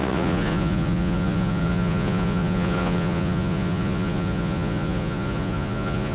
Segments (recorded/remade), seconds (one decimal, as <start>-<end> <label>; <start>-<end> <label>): 0.0-6.1 remade